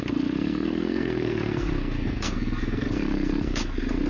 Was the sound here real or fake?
fake